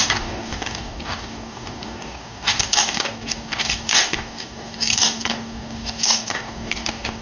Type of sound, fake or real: fake